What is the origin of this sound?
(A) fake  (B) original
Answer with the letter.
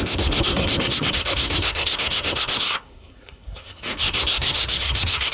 A